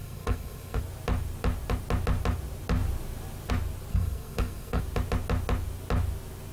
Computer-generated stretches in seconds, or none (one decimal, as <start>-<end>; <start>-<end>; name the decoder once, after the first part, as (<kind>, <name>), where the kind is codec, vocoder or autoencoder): 0.0-0.8 (codec, SNAC); 3.9-4.8